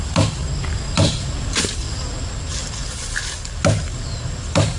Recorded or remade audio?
recorded